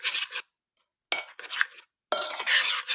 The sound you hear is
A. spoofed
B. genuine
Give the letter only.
B